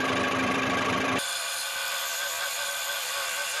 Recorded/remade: remade